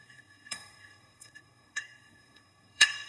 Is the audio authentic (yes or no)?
no